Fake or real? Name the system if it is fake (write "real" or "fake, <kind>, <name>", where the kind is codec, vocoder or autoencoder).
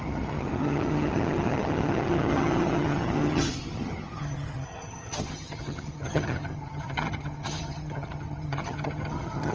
fake, vocoder, HiFi-GAN